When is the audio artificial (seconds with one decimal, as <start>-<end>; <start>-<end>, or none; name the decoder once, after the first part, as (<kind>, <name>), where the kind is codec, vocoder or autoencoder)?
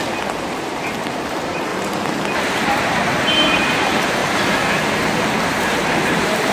0.0-1.7 (vocoder, BigVGAN v2); 2.4-4.2; 5.3-6.5